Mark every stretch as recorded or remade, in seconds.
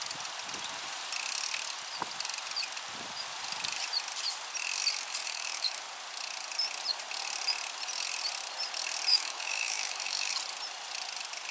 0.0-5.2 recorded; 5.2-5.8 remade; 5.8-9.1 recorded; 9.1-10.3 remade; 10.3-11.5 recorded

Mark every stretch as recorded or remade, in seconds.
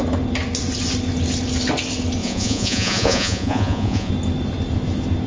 0.0-2.2 recorded; 2.2-4.1 remade; 4.1-5.3 recorded